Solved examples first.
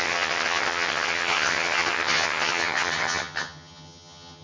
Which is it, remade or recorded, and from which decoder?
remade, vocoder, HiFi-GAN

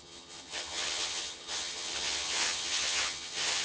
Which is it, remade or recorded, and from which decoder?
remade, vocoder, HiFi-GAN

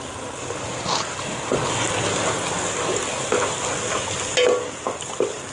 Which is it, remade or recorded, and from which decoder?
recorded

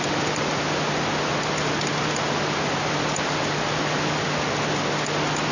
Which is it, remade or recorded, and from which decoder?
recorded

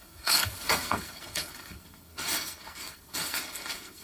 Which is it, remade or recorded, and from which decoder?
remade, codec, SNAC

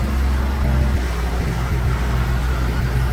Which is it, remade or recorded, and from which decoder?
recorded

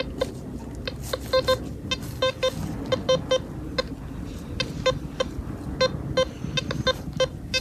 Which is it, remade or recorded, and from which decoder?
recorded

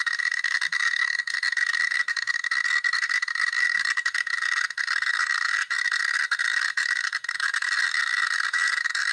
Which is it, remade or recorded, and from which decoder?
remade, codec, SNAC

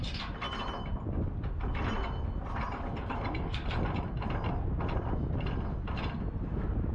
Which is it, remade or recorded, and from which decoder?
recorded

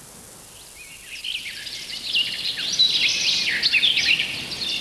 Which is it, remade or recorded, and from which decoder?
recorded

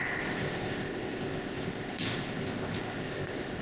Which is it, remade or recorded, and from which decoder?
remade, codec, ZipCodec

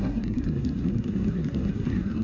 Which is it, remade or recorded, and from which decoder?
remade, codec, SNAC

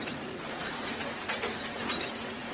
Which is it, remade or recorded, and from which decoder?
remade, vocoder, Vocos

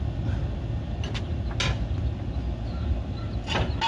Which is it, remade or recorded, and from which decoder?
recorded